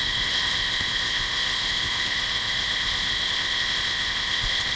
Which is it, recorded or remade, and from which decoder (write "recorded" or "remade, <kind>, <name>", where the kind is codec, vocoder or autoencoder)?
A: remade, codec, ZipCodec